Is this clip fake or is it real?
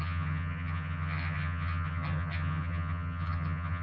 fake